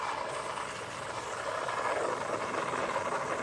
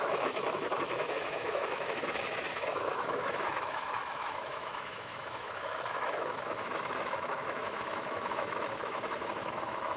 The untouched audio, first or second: first